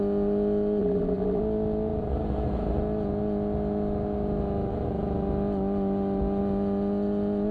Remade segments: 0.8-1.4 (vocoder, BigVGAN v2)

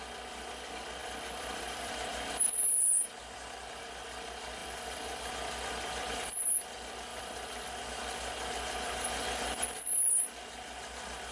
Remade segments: 1.0-1.9 (vocoder, BigVGAN v2); 4.6-5.3; 7.1-7.7